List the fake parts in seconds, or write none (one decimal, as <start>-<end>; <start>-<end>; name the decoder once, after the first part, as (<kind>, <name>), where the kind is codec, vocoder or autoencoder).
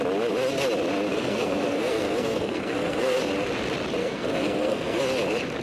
1.1-3.2 (codec, SNAC); 4.0-5.0